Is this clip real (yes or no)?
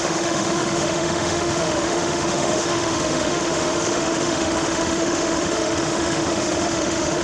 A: no